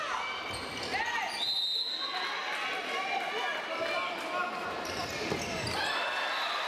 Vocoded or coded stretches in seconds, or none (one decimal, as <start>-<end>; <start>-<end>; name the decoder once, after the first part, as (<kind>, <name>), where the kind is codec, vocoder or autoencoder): none